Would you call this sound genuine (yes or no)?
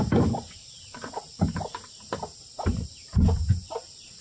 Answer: yes